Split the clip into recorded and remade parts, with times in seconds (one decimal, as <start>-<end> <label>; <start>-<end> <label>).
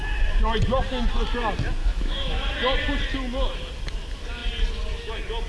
0.0-1.8 recorded; 1.8-2.5 remade; 2.5-5.5 recorded